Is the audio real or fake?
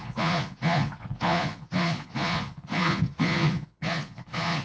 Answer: fake